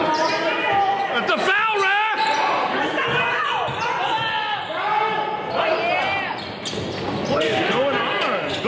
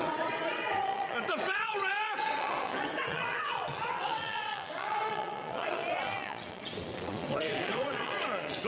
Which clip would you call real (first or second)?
first